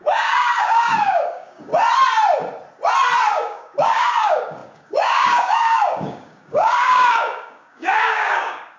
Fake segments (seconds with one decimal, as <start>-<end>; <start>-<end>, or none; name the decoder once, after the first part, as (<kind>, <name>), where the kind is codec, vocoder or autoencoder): 0.0-1.7 (codec, DAC); 3.3-8.8